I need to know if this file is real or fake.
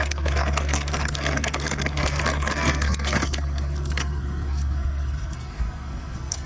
fake